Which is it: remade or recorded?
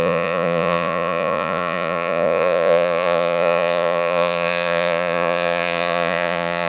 remade